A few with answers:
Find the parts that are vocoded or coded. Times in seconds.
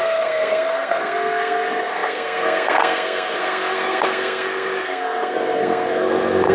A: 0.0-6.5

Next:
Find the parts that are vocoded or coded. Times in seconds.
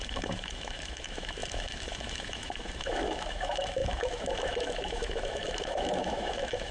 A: 0.0-6.7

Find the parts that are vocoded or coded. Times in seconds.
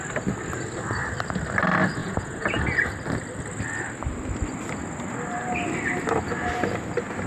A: 2.0-2.6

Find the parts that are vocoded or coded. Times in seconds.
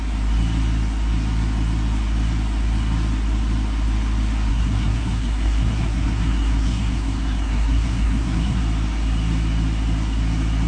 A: 4.5-8.6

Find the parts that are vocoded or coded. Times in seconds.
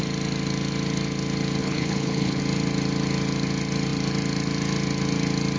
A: 1.6-2.4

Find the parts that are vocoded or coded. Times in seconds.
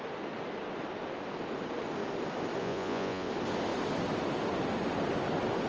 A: 2.6-3.3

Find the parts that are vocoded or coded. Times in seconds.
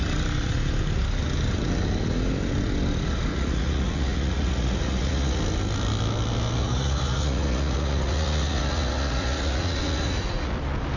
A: 3.3-5.4; 6.6-10.5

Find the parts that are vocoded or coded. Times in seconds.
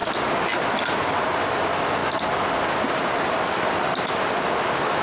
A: 2.0-5.0